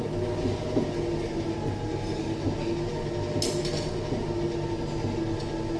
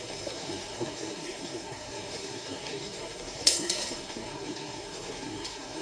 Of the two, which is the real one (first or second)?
first